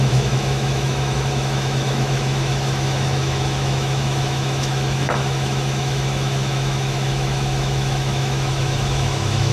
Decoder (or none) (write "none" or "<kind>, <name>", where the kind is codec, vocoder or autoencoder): autoencoder, DAC-VAE